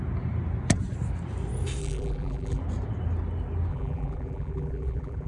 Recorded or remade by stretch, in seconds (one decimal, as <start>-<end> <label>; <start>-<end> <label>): 0.0-1.8 recorded; 1.8-2.6 remade; 2.6-3.7 recorded; 3.7-5.3 remade